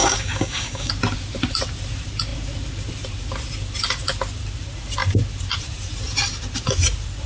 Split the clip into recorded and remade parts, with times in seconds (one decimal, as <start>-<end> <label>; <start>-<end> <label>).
0.0-0.9 remade; 0.9-7.3 recorded